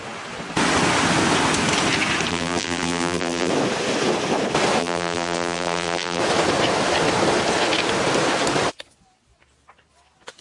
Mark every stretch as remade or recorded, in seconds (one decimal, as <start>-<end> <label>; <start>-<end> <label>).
0.0-2.3 recorded; 2.3-3.5 remade; 3.5-4.8 recorded; 4.8-6.2 remade; 6.2-10.4 recorded